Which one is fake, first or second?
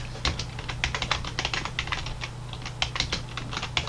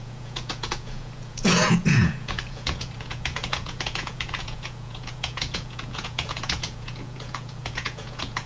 second